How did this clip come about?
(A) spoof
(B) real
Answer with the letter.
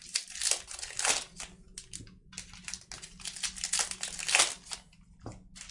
B